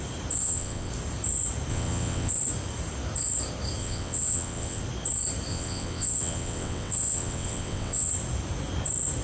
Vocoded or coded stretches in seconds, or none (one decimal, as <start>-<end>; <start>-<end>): 0.4-0.9; 1.7-2.3; 3.8-4.8; 5.5-8.1